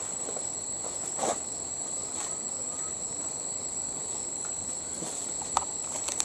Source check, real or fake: real